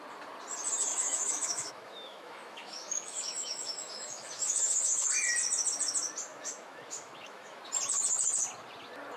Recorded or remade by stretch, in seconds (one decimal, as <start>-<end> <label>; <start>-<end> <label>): 0.0-0.9 recorded; 0.9-5.1 remade; 5.1-6.3 recorded; 6.3-7.6 remade; 7.6-9.2 recorded